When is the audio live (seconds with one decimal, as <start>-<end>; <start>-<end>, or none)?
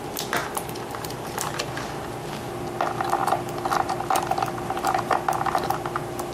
0.0-6.3